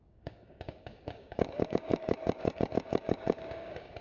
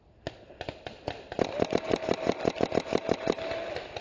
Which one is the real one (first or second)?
second